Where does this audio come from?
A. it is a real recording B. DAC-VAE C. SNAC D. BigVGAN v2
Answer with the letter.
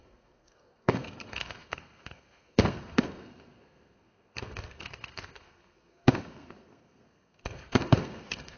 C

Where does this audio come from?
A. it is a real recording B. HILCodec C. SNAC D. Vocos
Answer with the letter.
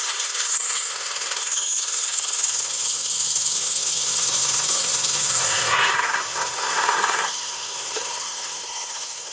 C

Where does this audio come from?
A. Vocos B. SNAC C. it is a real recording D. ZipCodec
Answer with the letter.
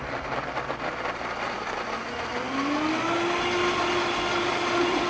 C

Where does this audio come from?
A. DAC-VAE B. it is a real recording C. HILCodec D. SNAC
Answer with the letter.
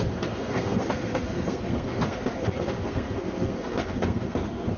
D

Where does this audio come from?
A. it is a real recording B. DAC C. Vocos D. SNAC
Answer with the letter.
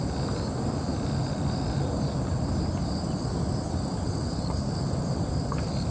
A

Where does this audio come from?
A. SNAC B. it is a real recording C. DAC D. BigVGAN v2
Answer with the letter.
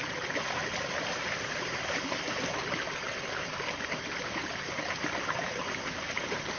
B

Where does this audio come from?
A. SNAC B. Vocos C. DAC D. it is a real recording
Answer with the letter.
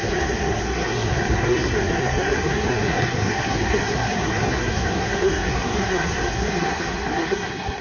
A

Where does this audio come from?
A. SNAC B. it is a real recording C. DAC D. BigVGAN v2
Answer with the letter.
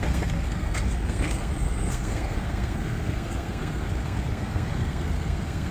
A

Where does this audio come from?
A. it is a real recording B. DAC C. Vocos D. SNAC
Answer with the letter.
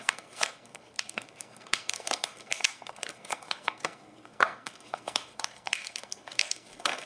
D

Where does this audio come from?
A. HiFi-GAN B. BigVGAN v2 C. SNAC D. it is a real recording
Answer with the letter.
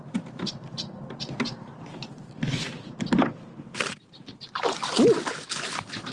D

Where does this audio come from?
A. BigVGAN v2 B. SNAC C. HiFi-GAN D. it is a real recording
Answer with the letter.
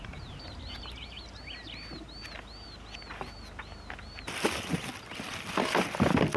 D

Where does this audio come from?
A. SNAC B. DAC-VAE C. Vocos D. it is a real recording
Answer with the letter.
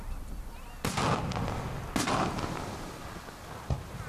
D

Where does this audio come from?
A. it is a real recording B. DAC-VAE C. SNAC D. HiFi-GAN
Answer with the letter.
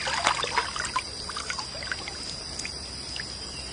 A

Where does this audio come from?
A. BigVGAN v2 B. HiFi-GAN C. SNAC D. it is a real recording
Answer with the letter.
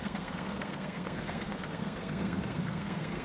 C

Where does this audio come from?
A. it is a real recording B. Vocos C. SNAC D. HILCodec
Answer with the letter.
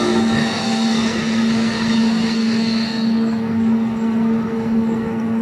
C